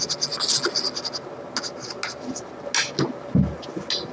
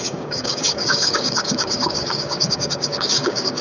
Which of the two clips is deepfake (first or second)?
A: second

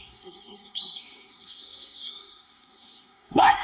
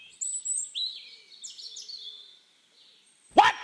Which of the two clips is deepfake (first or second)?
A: first